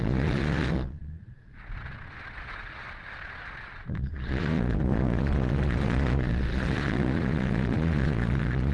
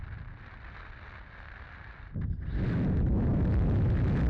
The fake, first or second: first